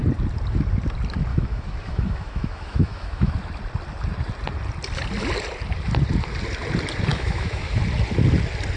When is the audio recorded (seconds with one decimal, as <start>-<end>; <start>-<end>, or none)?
0.0-1.3; 3.3-7.1; 7.8-8.8